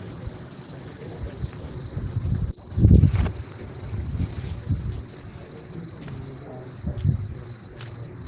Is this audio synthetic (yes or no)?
no